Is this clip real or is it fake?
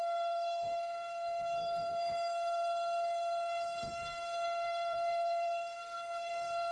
fake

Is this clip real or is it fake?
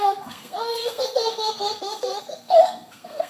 fake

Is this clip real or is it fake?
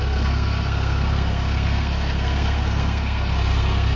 fake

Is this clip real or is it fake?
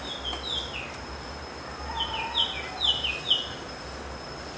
real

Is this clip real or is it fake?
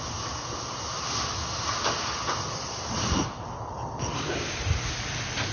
real